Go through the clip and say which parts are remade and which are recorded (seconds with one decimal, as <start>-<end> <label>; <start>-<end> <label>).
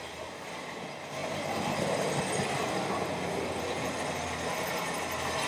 0.0-5.5 recorded